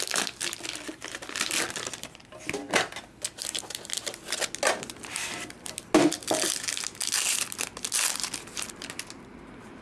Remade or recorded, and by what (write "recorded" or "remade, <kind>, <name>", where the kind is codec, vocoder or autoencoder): recorded